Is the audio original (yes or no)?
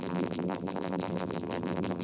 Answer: no